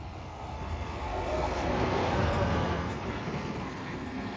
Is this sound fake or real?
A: fake